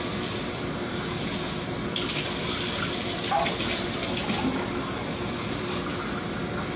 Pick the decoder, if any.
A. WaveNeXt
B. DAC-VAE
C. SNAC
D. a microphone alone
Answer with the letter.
D